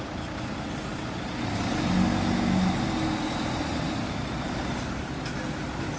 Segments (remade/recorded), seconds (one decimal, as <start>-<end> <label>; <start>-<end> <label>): 0.0-6.0 recorded